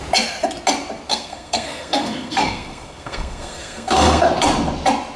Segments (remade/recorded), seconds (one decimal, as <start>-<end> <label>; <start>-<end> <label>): 0.0-1.1 recorded; 1.1-4.2 remade; 4.2-5.2 recorded